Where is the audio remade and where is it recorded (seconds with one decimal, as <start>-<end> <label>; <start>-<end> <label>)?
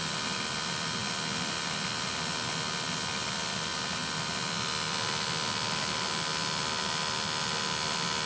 0.0-8.3 recorded